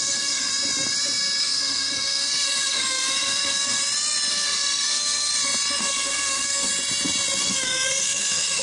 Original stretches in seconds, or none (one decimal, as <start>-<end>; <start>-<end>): 0.5-1.4; 3.8-4.3; 5.3-5.8; 6.7-7.4